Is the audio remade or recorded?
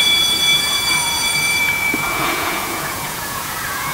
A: remade